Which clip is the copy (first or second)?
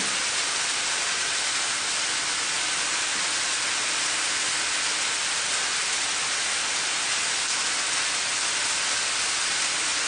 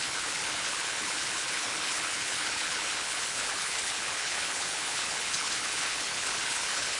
second